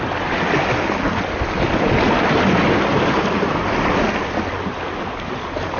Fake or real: real